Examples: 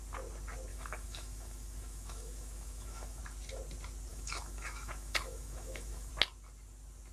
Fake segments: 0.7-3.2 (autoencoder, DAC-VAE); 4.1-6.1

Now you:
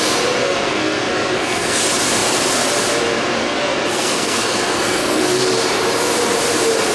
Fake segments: 0.4-1.8 (codec, SNAC); 3.4-5.2

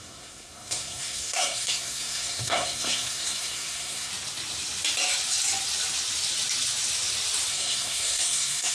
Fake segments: 0.0-4.1 (codec, SNAC); 7.5-8.7

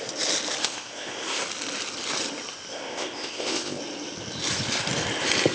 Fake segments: 0.6-1.4 (codec, ZipCodec); 2.7-3.8

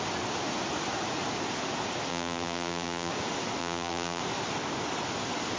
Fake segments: 2.1-3.1 (vocoder, BigVGAN v2); 3.6-4.2

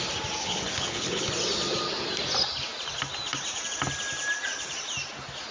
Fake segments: 0.4-1.3 (codec, HILCodec)

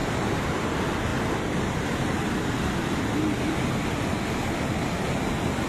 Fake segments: 0.0-0.5 (vocoder, BigVGAN v2)